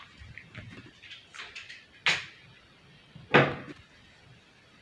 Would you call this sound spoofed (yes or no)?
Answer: no